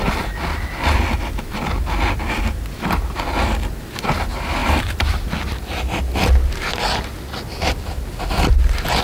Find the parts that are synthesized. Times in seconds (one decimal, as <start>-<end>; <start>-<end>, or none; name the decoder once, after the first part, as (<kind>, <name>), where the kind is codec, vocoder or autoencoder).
4.6-5.3 (vocoder, BigVGAN v2)